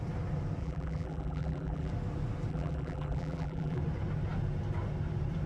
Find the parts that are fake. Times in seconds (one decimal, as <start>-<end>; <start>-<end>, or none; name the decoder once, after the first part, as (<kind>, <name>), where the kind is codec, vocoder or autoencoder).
0.6-1.9 (vocoder, BigVGAN v2); 2.5-3.8